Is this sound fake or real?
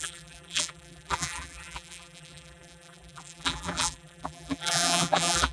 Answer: fake